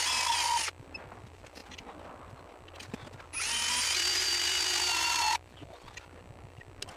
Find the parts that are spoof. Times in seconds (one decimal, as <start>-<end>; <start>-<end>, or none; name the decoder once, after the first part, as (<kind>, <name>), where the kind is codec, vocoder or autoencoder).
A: none

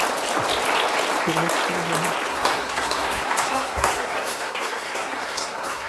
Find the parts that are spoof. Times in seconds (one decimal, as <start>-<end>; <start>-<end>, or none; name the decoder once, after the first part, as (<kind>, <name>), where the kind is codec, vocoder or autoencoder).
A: 2.3-5.9 (codec, SNAC)